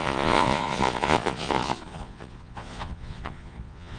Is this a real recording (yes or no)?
no